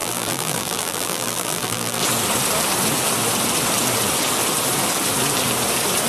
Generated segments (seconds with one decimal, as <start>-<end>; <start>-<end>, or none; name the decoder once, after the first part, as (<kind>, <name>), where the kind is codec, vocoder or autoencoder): 0.0-2.0 (vocoder, BigVGAN v2)